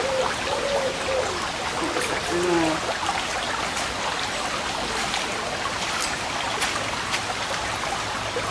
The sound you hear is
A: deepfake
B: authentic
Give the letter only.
B